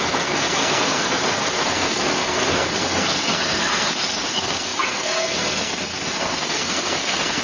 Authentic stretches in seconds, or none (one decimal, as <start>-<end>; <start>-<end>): none